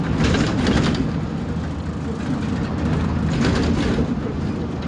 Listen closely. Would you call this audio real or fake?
real